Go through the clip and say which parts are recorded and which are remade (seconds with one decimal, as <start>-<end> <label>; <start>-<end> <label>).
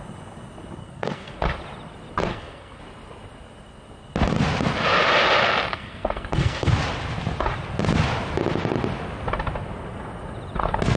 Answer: 0.0-0.8 recorded; 0.8-1.4 remade; 1.4-2.3 recorded; 2.3-2.8 remade; 2.8-5.7 recorded; 5.7-6.7 remade; 6.7-11.0 recorded